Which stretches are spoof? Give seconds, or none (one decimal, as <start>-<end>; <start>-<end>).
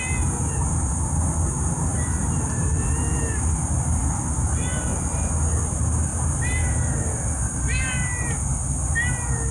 none